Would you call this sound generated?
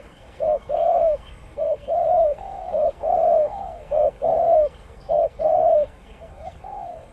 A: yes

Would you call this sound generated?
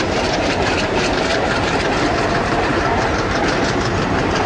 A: yes